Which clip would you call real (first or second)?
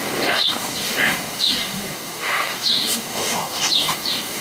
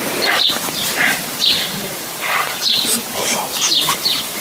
second